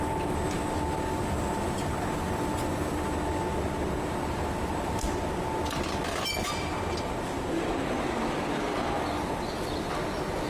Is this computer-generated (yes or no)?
no